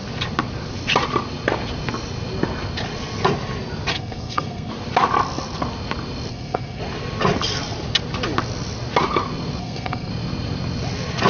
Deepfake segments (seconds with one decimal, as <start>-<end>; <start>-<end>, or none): 3.9-4.7; 6.3-6.8; 9.6-10.1